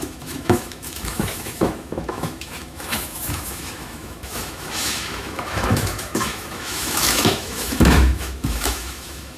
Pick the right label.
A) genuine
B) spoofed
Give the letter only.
B